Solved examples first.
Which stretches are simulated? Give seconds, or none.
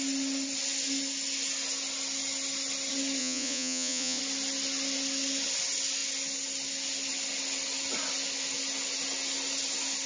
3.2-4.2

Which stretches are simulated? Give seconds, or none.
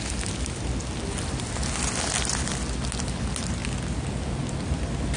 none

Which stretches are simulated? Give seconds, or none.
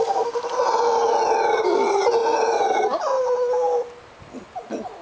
none